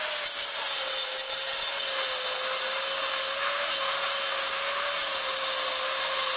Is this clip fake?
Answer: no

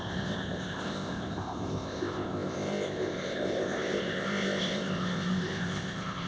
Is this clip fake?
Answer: yes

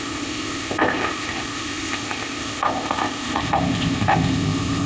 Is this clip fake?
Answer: yes